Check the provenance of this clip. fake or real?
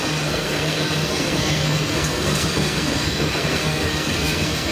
fake